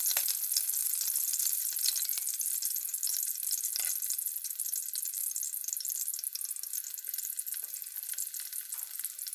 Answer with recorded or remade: recorded